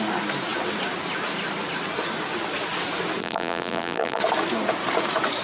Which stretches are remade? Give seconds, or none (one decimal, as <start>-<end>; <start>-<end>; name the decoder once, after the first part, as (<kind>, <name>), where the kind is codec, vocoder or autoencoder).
3.2-4.2 (vocoder, BigVGAN v2)